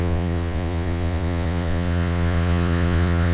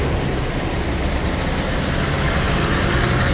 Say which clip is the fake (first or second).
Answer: first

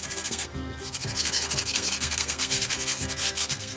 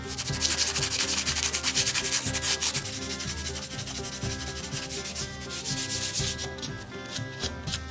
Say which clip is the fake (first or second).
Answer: first